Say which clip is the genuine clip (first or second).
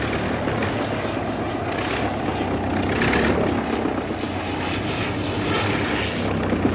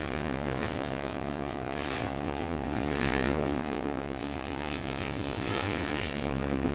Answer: first